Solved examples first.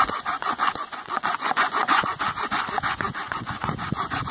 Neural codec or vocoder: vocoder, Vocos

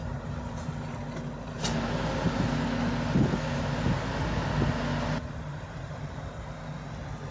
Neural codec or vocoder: none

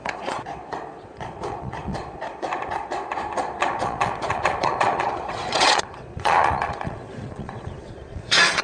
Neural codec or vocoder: vocoder, Vocos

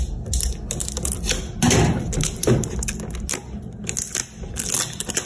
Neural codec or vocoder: none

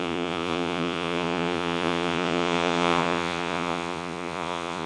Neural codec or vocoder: vocoder, Vocos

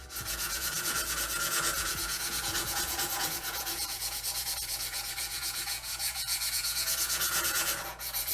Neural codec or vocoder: vocoder, Vocos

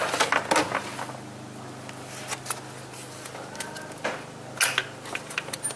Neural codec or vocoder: none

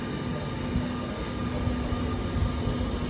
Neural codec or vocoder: none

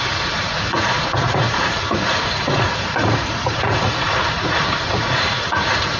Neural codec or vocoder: vocoder, Vocos